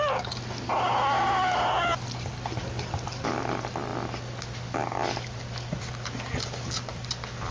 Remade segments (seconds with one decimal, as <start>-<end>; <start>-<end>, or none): none